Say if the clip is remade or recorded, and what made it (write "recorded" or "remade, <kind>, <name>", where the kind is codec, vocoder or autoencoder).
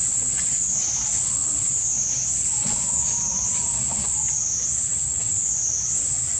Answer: remade, vocoder, Vocos